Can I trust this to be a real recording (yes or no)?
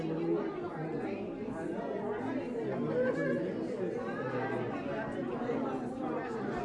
yes